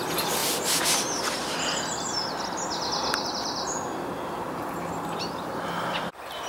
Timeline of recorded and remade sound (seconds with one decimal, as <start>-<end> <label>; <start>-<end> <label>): 0.0-6.5 recorded